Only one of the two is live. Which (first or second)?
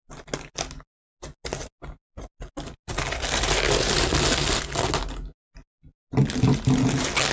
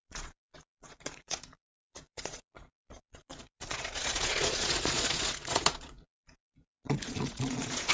first